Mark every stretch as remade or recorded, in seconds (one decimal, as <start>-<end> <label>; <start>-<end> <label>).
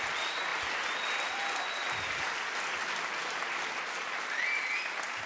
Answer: 0.0-5.3 recorded